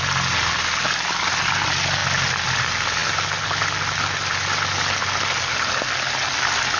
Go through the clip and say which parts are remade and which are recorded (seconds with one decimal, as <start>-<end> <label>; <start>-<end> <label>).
0.0-6.8 recorded